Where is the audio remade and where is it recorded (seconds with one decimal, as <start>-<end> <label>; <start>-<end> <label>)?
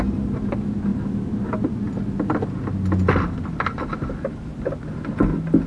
0.0-5.7 recorded